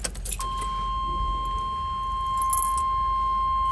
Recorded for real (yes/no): yes